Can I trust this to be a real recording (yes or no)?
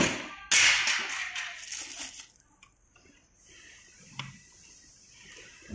yes